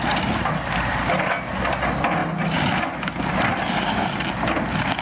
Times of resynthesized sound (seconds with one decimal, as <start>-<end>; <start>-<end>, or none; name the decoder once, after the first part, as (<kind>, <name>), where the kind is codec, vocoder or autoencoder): none